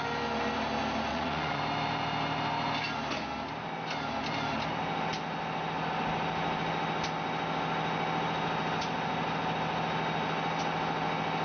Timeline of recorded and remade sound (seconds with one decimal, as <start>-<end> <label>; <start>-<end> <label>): 0.0-1.1 recorded; 1.1-1.6 remade; 1.6-11.4 recorded